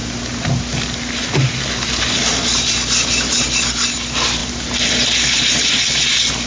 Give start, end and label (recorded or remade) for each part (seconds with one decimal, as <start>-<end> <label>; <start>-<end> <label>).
0.0-6.5 recorded